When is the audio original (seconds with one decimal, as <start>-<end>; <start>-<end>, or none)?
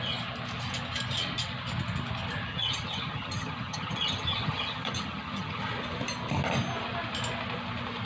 0.0-2.5; 5.7-8.1